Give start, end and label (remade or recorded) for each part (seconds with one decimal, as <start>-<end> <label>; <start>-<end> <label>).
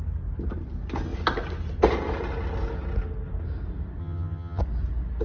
0.0-4.0 recorded; 4.0-4.6 remade; 4.6-5.2 recorded